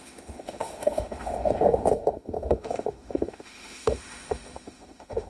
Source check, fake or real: fake